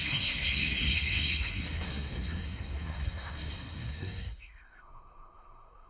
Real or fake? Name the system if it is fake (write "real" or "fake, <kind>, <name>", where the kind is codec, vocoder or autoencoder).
fake, codec, SNAC